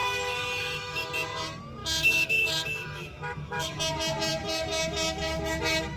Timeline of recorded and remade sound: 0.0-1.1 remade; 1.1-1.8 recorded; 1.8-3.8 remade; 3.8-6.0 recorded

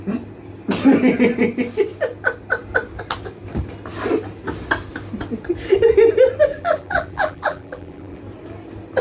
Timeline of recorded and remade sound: 0.0-6.5 recorded; 6.5-8.2 remade; 8.2-9.0 recorded

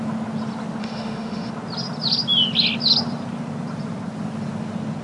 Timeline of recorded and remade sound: 0.0-0.8 recorded; 0.8-1.5 remade; 1.5-5.0 recorded

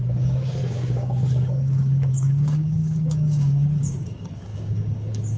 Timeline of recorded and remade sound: 0.0-5.4 remade

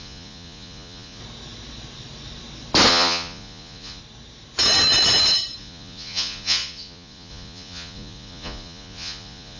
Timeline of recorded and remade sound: 0.0-1.2 remade; 1.2-2.9 recorded; 2.9-4.0 remade; 4.0-5.6 recorded; 5.6-9.6 remade